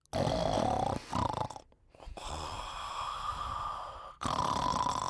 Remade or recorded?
recorded